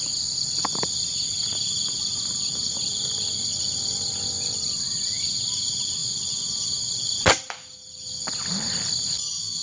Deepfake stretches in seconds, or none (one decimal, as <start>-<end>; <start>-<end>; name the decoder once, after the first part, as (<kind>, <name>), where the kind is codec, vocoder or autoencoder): 0.0-9.6 (vocoder, BigVGAN v2)